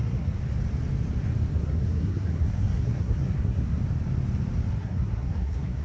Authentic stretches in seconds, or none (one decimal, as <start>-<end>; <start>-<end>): 0.4-1.6; 3.8-4.8